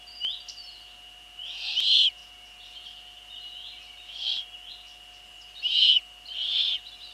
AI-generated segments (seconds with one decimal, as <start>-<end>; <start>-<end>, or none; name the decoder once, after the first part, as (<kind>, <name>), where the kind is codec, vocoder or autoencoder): none